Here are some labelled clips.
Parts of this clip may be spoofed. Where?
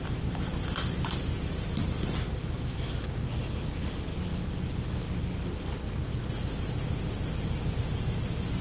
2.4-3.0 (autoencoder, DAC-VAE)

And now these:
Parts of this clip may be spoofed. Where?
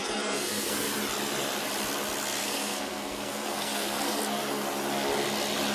0.0-0.9 (codec, SNAC); 2.4-4.2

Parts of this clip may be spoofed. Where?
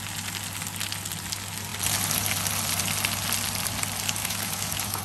4.2-5.0 (autoencoder, DAC-VAE)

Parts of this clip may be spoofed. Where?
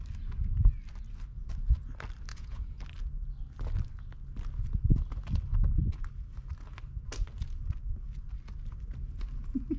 2.3-2.8 (vocoder, Vocos)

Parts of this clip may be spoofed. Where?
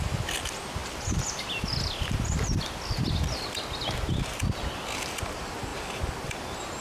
none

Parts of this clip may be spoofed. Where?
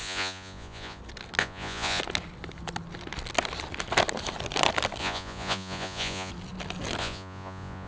0.0-1.0 (vocoder, Vocos); 1.4-2.0; 5.0-6.3; 7.0-7.9